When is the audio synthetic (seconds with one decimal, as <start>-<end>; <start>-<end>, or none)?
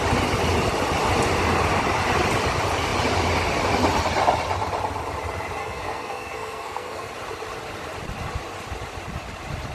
5.6-7.1